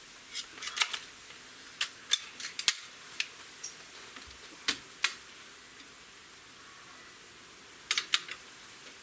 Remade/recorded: recorded